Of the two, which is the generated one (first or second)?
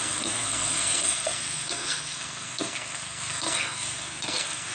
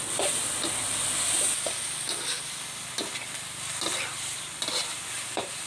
first